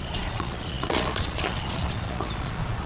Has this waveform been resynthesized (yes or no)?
yes